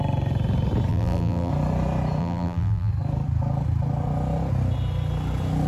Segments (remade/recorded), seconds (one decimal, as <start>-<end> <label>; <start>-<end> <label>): 0.0-0.9 recorded; 0.9-1.5 remade; 1.5-2.2 recorded; 2.2-2.9 remade; 2.9-5.7 recorded